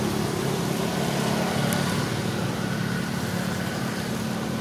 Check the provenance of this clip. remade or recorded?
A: recorded